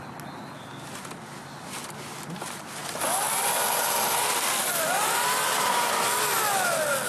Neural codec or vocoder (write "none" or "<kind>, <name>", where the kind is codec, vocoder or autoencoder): none